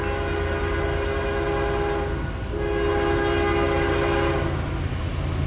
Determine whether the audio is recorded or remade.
recorded